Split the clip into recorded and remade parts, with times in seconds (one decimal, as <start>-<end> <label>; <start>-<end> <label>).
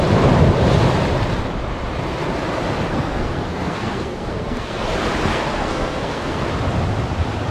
0.0-2.9 recorded; 2.9-4.8 remade; 4.8-5.3 recorded; 5.3-6.5 remade; 6.5-7.5 recorded